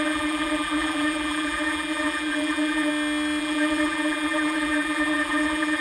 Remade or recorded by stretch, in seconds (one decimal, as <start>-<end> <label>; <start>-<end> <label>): 0.0-2.9 remade; 2.9-3.4 recorded; 3.4-5.8 remade